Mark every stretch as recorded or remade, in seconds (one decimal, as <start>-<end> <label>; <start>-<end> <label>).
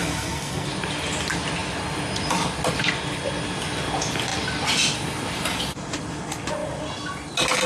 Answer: 0.0-0.7 remade; 0.7-7.7 recorded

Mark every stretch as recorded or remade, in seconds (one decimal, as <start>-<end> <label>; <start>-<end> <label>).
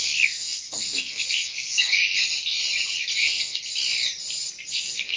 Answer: 0.0-2.0 remade; 2.0-3.2 recorded; 3.2-3.6 remade; 3.6-4.7 recorded; 4.7-5.2 remade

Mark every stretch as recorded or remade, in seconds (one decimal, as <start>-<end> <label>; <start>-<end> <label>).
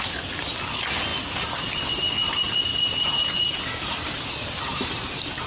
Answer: 0.0-5.5 recorded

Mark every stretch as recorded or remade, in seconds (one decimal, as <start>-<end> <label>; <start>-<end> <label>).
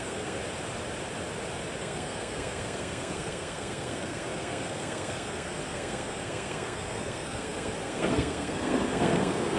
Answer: 0.0-0.4 remade; 0.4-1.8 recorded; 1.8-9.6 remade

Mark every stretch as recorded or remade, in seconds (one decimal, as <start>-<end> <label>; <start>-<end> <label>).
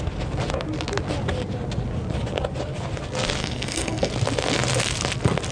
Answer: 0.0-3.4 recorded; 3.4-4.1 remade; 4.1-5.5 recorded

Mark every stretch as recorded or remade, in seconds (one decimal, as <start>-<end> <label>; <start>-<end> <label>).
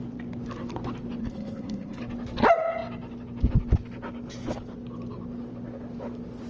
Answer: 0.0-1.2 recorded; 1.2-2.0 remade; 2.0-6.5 recorded